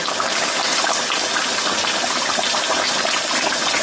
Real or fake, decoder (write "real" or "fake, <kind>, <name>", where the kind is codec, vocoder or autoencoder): real